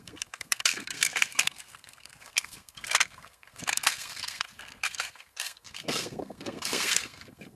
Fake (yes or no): yes